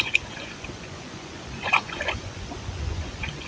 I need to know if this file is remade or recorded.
remade